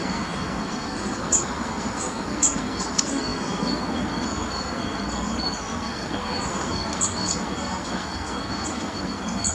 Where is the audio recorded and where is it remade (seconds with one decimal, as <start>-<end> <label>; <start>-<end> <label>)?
0.0-9.5 remade